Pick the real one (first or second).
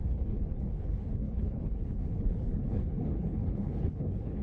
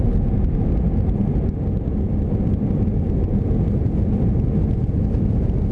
second